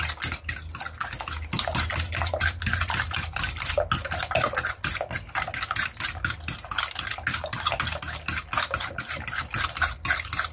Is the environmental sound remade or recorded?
recorded